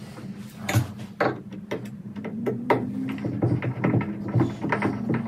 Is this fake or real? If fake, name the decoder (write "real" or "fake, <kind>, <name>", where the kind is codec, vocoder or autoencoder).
real